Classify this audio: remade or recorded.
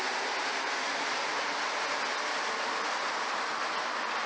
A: recorded